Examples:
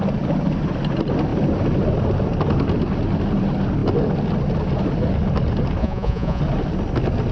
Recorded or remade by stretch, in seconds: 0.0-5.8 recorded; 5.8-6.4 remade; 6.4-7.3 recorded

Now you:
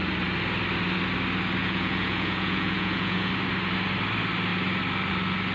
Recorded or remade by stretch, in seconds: 0.0-1.6 recorded; 1.6-3.3 remade; 3.3-5.5 recorded

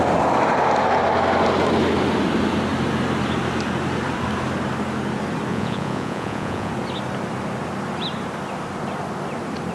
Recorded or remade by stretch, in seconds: 0.0-5.5 recorded; 5.5-6.7 remade; 6.7-9.7 recorded

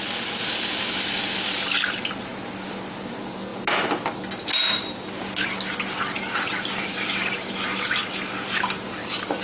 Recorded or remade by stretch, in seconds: 0.0-9.4 recorded

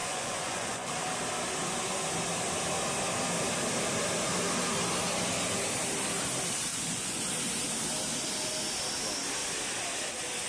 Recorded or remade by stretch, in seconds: 0.0-0.9 remade; 0.9-6.7 recorded; 6.7-7.2 remade; 7.2-10.5 recorded

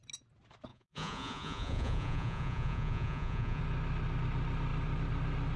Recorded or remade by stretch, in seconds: 0.0-0.7 recorded; 0.7-3.6 remade; 3.6-5.6 recorded

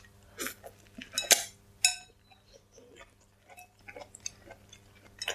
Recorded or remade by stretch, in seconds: 0.0-5.3 recorded

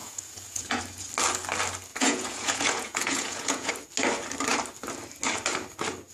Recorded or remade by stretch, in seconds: 0.0-0.8 remade; 0.8-1.9 recorded; 1.9-3.7 remade; 3.7-6.1 recorded